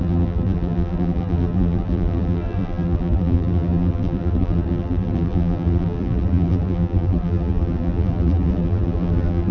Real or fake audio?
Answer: fake